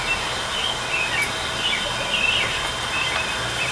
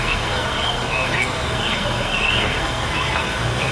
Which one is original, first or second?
first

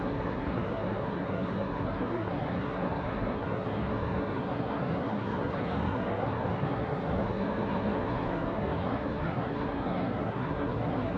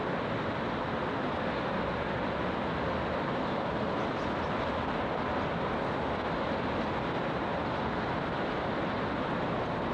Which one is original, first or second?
second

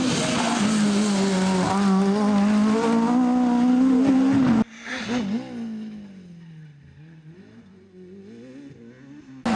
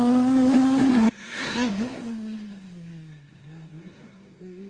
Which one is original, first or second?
first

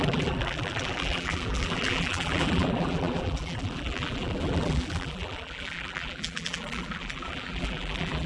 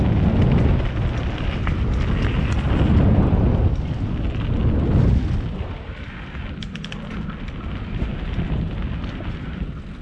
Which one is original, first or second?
second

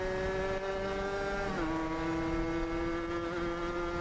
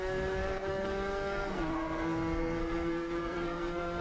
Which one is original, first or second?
first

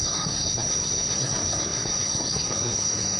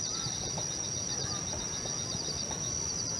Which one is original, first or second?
second